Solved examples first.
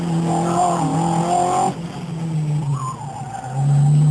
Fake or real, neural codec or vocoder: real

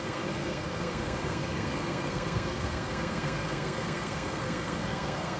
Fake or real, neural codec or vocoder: fake, codec, SNAC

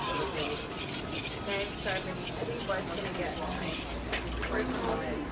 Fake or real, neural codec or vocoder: real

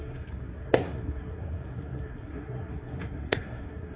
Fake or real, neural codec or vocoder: fake, codec, SNAC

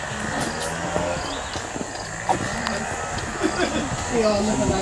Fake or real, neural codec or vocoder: real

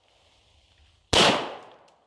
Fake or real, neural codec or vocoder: real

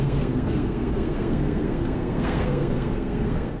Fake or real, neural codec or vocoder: fake, codec, SNAC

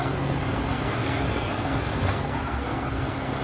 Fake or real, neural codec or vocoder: fake, codec, SNAC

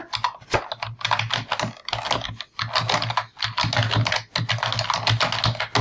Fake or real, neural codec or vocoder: real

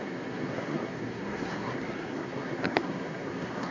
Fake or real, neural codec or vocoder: fake, codec, SNAC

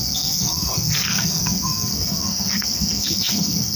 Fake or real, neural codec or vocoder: fake, codec, SNAC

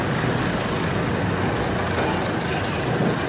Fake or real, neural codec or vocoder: real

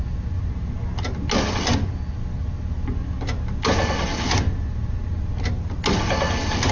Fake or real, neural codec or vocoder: real